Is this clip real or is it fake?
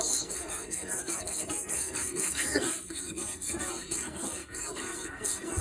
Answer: fake